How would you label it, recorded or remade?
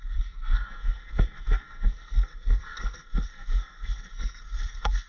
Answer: remade